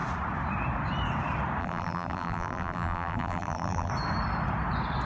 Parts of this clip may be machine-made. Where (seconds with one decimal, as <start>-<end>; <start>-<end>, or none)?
1.6-3.9